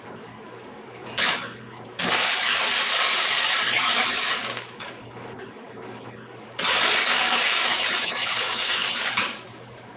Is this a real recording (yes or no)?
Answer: no